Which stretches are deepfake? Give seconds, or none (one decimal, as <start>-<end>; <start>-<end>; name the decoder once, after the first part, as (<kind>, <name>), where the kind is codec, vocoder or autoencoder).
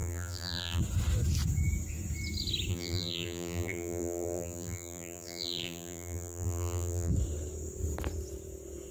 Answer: 0.0-0.8 (vocoder, BigVGAN v2); 2.7-7.1